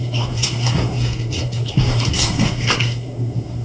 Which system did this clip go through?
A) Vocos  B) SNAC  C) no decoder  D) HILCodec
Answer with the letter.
B